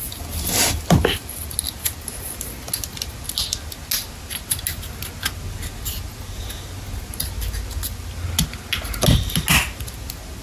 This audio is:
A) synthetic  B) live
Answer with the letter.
B